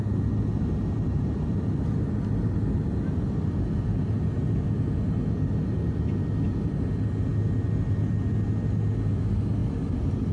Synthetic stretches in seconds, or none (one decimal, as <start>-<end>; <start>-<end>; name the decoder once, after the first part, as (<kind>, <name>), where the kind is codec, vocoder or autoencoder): none